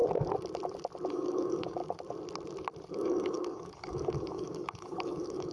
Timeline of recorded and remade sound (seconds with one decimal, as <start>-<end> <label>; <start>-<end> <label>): 0.0-1.1 recorded; 1.1-1.8 remade; 1.8-2.9 recorded; 2.9-5.5 remade